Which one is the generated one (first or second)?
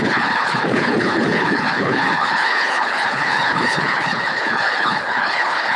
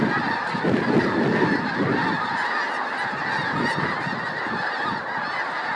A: first